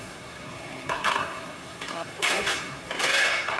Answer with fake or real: fake